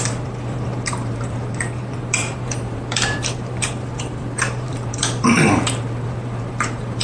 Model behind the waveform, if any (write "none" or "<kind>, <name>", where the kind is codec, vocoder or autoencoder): vocoder, BigVGAN v2